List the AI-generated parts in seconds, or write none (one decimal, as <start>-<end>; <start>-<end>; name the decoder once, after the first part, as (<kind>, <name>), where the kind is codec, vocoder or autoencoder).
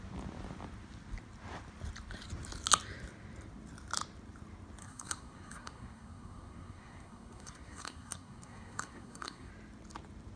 4.8-9.5 (codec, SNAC)